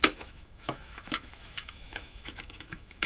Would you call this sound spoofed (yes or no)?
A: yes